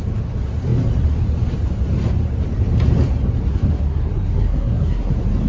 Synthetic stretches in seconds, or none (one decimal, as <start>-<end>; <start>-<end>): 3.5-5.1